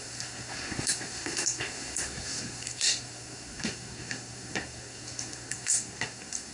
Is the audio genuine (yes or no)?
no